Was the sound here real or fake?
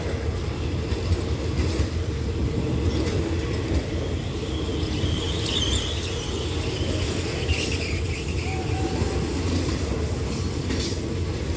real